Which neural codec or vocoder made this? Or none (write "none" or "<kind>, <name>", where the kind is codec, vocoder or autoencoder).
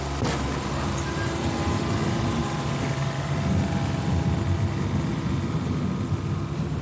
none